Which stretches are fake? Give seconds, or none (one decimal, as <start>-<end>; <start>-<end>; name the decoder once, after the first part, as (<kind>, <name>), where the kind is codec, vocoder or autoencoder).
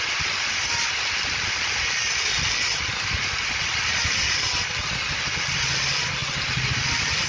none